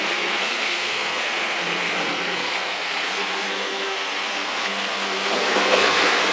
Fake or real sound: fake